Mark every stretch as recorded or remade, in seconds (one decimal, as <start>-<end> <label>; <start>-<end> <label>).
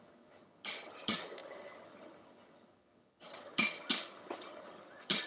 0.0-5.3 remade